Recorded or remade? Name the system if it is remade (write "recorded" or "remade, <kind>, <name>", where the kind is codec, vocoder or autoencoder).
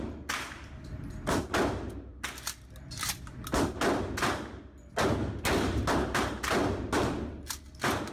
recorded